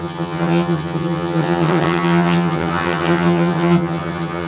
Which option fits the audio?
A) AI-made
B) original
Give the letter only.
A